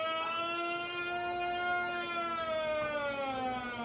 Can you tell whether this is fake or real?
real